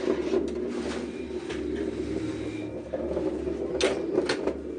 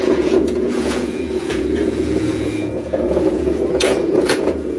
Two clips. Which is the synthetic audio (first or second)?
second